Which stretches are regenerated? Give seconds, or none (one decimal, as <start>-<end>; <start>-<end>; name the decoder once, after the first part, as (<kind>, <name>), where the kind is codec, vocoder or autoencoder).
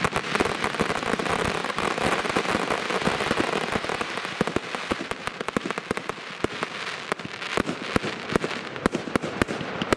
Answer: none